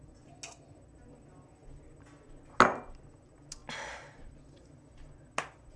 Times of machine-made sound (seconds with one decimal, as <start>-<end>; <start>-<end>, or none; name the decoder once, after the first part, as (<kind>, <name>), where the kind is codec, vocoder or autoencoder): none